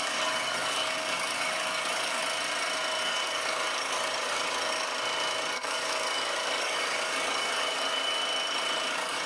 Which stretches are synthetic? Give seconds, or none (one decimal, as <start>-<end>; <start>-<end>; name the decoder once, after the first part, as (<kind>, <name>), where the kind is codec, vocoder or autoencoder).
0.0-2.2 (codec, DAC); 3.0-4.9; 5.5-8.2; 8.9-9.3